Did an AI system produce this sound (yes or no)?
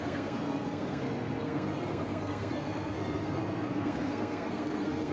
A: yes